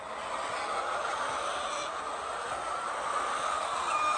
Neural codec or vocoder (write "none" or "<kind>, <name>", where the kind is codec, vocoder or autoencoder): none